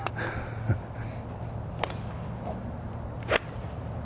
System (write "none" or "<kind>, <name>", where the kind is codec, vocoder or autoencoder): none